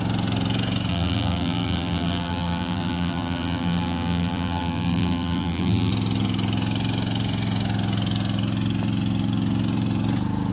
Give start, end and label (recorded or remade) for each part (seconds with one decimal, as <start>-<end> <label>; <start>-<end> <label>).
0.0-0.9 recorded; 0.9-5.9 remade; 5.9-10.5 recorded